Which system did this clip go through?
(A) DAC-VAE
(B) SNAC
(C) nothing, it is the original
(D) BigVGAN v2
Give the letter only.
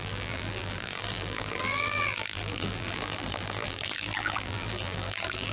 D